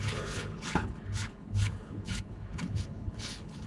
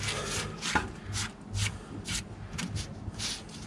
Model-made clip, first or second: first